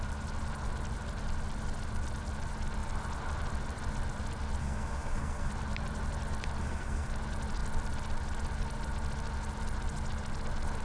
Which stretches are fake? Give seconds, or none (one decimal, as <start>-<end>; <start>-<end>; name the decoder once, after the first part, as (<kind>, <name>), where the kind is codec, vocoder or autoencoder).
4.6-5.5 (codec, SNAC); 6.6-7.1

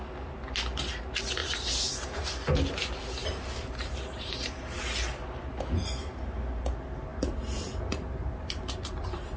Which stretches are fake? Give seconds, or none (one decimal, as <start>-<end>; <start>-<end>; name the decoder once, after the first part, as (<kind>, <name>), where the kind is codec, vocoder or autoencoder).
1.4-2.2 (vocoder, BigVGAN v2); 3.2-5.2